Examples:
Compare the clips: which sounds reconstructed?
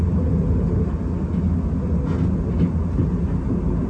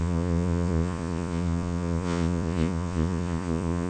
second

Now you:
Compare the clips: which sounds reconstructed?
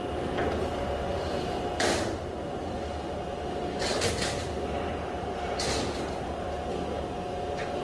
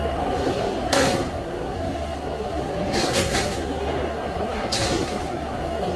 second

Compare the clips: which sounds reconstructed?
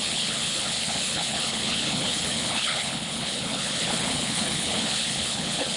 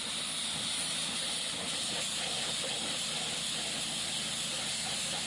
first